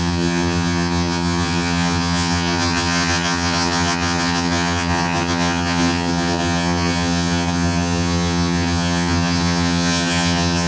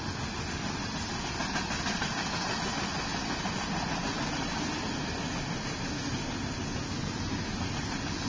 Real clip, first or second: second